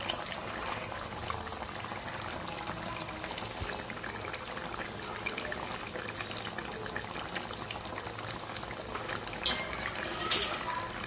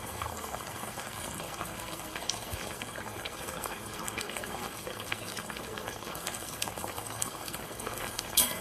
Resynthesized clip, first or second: second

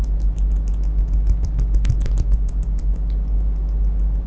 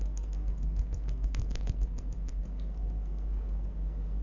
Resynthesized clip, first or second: second